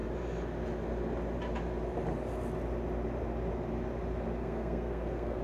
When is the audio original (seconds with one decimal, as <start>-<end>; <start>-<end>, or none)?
0.0-4.4